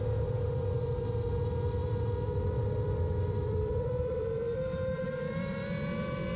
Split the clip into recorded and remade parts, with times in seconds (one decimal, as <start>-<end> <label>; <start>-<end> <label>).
0.0-1.8 recorded; 1.8-5.6 remade; 5.6-6.4 recorded